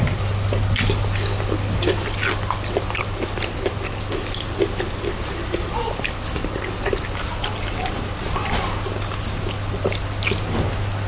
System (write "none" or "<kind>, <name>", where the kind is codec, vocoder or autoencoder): none